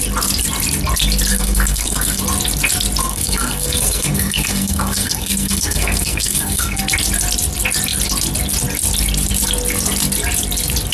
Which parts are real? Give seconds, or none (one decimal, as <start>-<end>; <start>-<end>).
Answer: 0.0-1.3; 2.2-3.0; 6.8-10.9